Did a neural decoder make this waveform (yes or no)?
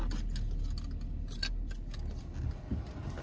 no